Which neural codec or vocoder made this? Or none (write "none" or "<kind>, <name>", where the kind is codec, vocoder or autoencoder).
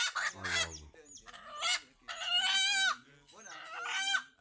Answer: none